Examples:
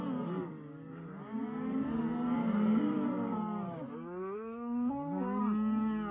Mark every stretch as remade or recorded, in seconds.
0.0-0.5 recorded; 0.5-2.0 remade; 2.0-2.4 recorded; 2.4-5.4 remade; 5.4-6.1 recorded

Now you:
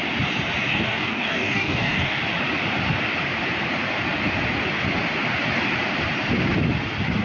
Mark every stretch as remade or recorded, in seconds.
0.0-0.7 recorded; 0.7-2.2 remade; 2.2-7.2 recorded

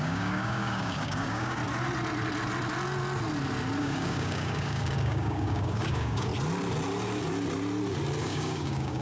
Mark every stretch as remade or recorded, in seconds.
0.0-1.6 remade; 1.6-3.8 recorded; 3.8-6.3 remade; 6.3-8.2 recorded; 8.2-9.0 remade

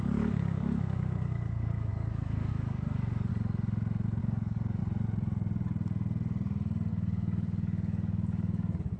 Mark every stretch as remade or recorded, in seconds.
0.0-3.3 remade; 3.3-4.2 recorded; 4.2-4.8 remade; 4.8-6.9 recorded; 6.9-9.0 remade

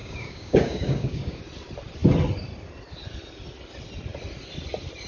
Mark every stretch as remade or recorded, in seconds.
0.0-1.4 remade; 1.4-5.1 recorded

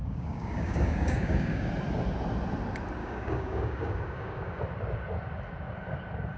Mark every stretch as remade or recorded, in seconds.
0.0-1.7 remade; 1.7-3.0 recorded; 3.0-4.6 remade; 4.6-6.4 recorded

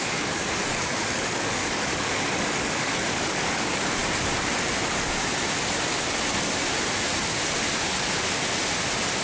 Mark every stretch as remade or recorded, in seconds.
0.0-4.0 remade; 4.0-9.2 recorded